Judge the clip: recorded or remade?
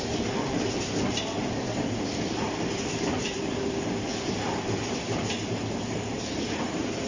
remade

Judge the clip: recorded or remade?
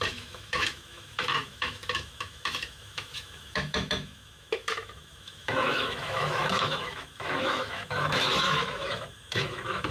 remade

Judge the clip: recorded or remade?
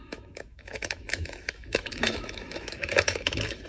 remade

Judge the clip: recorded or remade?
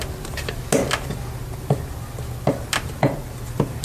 recorded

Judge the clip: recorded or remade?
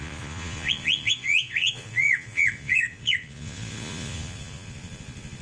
remade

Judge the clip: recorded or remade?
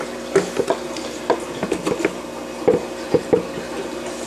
recorded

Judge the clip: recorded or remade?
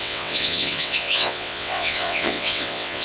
remade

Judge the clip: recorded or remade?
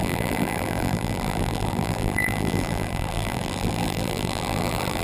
remade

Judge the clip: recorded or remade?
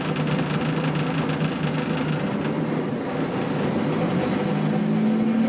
recorded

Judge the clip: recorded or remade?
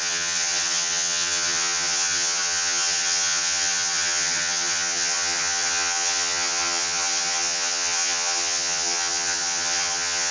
remade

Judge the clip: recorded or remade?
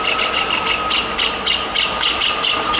recorded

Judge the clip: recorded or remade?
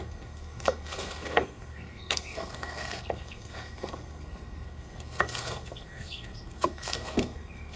remade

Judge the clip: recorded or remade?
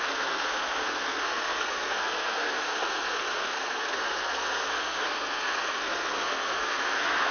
remade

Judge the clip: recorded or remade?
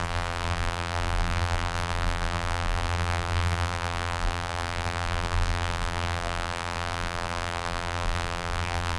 remade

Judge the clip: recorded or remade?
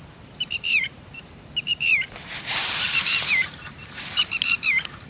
remade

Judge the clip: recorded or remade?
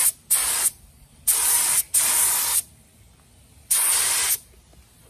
recorded